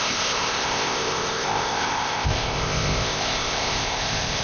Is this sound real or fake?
fake